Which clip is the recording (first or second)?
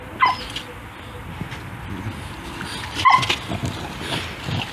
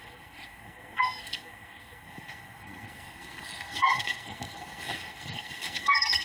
first